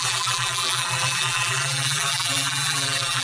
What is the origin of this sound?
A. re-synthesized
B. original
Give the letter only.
A